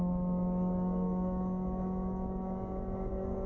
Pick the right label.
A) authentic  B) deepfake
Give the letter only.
B